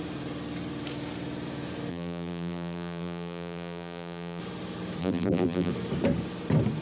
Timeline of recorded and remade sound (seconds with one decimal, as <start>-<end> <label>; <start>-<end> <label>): 0.0-1.9 recorded; 1.9-4.4 remade; 4.4-5.0 recorded; 5.0-5.7 remade; 5.7-6.8 recorded